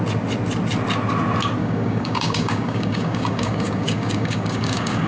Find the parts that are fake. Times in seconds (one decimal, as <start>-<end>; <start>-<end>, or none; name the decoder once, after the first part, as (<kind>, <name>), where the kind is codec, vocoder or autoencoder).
1.6-5.1 (codec, DAC)